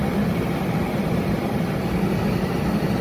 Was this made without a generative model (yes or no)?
yes